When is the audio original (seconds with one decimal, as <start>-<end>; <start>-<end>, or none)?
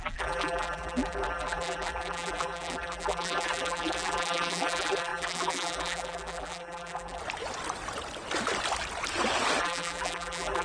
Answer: 7.2-9.6